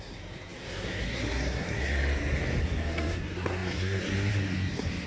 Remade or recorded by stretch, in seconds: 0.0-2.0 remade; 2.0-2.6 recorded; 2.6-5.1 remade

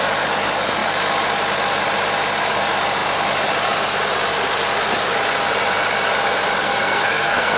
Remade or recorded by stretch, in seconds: 0.0-6.6 recorded; 6.6-7.6 remade

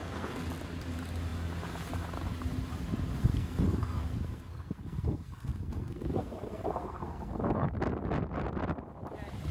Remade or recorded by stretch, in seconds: 0.0-0.5 remade; 0.5-3.2 recorded; 3.2-7.7 remade; 7.7-9.5 recorded

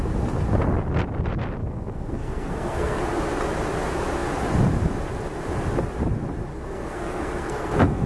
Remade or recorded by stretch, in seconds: 0.0-1.6 recorded; 1.6-3.0 remade; 3.0-6.5 recorded; 6.5-8.1 remade